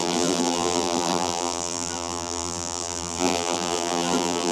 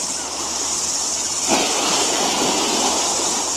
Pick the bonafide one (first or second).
second